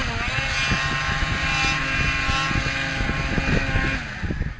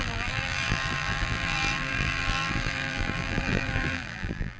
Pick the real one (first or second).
first